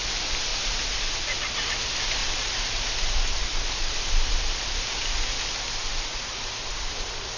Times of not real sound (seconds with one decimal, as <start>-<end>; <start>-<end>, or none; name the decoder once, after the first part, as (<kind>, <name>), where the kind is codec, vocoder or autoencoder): 0.5-1.2 (vocoder, BigVGAN v2); 3.4-4.9; 6.1-7.4